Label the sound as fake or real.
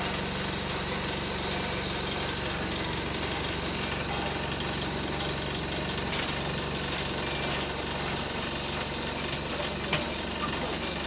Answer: real